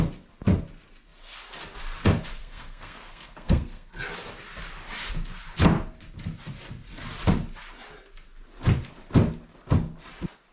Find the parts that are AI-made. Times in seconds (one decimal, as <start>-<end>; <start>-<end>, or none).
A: 2.4-3.9